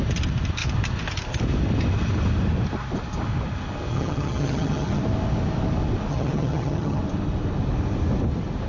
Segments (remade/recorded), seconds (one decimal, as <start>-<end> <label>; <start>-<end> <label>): 0.0-3.9 recorded; 3.9-5.0 remade; 5.0-6.1 recorded; 6.1-7.0 remade; 7.0-8.7 recorded